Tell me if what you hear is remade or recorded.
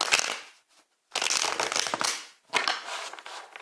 recorded